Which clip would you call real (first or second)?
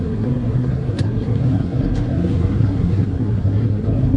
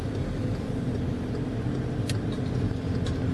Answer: second